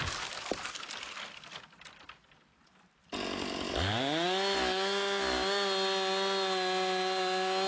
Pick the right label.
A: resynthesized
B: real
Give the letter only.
B